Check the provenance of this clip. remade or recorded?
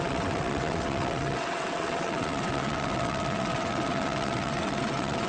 remade